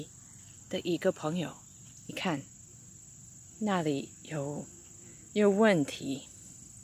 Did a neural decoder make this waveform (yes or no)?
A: no